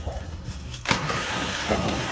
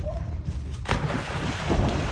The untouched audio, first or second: second